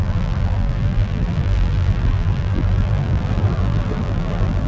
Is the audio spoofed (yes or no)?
yes